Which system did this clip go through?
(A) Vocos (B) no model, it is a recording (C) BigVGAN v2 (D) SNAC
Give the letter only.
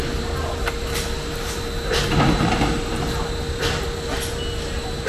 B